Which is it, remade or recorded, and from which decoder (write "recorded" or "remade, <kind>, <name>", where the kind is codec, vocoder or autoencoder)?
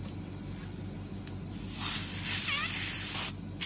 recorded